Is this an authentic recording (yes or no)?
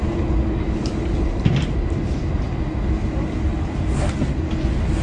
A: yes